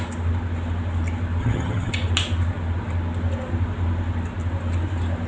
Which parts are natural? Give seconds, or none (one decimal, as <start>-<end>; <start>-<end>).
0.0-1.4; 1.9-5.3